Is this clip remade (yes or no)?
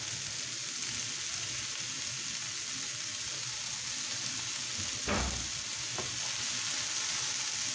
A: no